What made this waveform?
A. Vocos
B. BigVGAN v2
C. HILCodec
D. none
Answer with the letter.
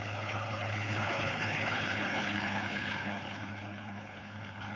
C